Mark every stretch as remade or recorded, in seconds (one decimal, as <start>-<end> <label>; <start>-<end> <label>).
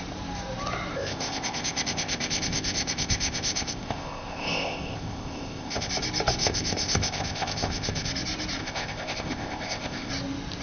0.0-0.9 recorded; 0.9-5.9 remade; 5.9-6.4 recorded; 6.4-8.1 remade; 8.1-8.6 recorded; 8.6-10.1 remade; 10.1-10.6 recorded